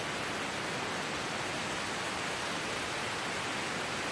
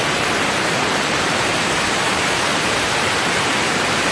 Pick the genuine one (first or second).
first